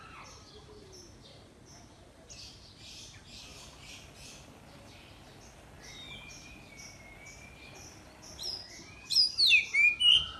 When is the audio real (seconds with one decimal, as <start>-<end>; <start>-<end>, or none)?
0.0-10.4